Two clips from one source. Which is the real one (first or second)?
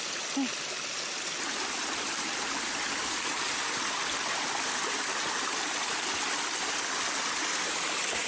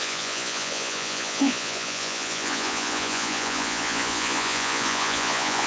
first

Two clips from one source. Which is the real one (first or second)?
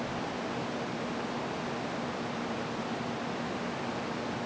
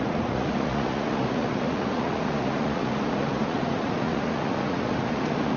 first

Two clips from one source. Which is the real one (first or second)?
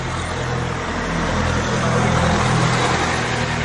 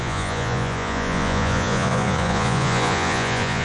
first